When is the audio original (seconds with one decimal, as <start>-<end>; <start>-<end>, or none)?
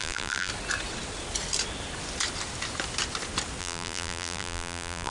0.5-3.6